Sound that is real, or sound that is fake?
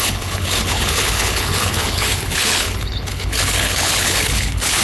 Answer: fake